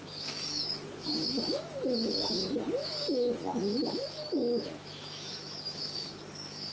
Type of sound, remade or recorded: remade